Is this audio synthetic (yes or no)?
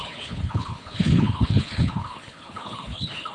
yes